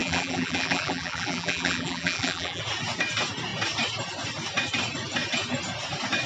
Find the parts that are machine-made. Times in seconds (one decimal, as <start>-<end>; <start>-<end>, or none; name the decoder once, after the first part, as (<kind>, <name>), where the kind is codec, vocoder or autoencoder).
0.0-2.6 (vocoder, BigVGAN v2)